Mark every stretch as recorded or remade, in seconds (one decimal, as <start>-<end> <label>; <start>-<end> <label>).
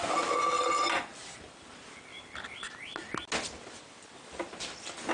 0.0-5.1 recorded